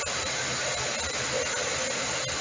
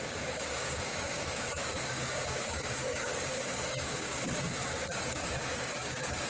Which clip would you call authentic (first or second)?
first